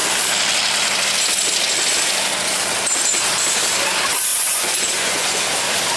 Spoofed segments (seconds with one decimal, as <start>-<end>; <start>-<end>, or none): 4.3-5.4